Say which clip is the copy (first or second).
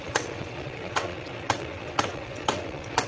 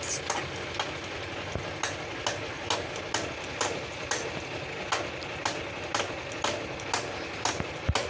first